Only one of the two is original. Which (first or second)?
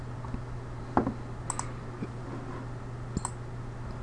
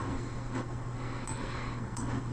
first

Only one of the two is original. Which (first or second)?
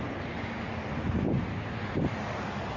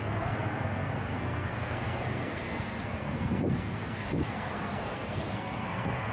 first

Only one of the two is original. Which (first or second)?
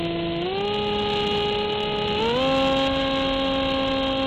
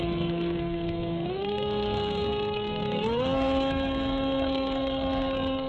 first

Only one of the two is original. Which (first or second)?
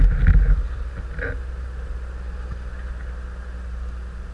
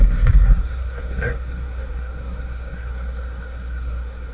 first